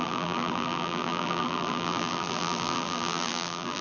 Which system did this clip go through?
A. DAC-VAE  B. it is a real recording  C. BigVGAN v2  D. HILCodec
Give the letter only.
C